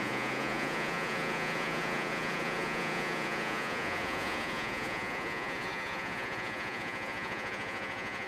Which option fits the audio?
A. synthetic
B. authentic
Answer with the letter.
A